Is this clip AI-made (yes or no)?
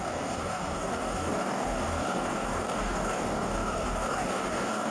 yes